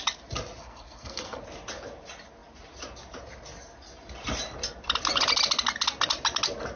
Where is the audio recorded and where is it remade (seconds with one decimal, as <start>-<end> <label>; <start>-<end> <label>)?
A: 0.0-0.6 recorded; 0.6-1.4 remade; 1.4-6.8 recorded